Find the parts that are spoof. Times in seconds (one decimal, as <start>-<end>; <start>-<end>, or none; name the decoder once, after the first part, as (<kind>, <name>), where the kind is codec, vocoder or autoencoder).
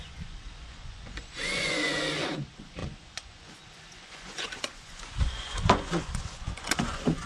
0.0-7.3 (vocoder, Vocos)